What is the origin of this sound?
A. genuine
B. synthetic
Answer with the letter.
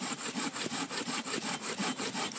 B